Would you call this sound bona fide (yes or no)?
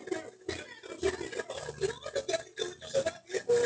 yes